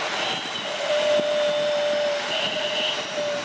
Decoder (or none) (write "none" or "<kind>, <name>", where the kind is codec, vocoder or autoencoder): none